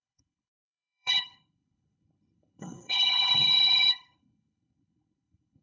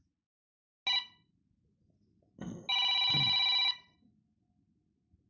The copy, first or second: first